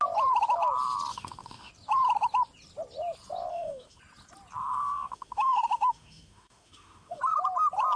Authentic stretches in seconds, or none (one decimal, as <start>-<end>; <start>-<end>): 0.0-1.1; 1.7-3.5; 4.0-4.6; 7.2-8.0

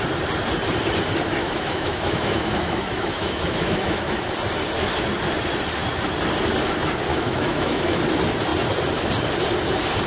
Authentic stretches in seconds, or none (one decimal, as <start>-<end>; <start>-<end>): 0.0-1.4; 4.1-7.1; 8.0-10.1